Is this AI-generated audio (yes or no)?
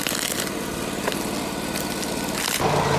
no